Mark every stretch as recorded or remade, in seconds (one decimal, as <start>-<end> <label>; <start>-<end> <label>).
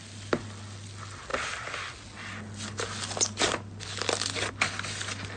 0.0-5.4 recorded